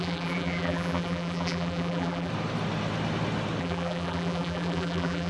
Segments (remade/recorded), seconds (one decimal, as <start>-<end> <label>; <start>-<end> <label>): 0.0-2.3 remade; 2.3-3.6 recorded; 3.6-5.3 remade